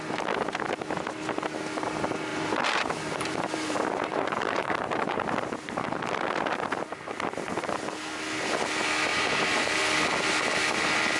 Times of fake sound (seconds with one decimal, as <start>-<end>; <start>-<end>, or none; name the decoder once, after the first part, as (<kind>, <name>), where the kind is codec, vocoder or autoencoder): 2.3-6.1 (vocoder, BigVGAN v2); 9.1-9.8